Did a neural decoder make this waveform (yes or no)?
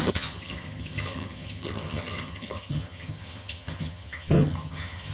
yes